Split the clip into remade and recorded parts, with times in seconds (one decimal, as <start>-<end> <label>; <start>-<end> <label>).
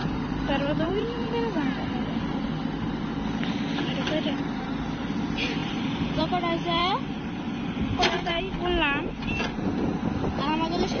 0.0-1.3 remade; 1.3-5.6 recorded; 5.6-6.2 remade; 6.2-6.8 recorded; 6.8-8.4 remade; 8.4-11.0 recorded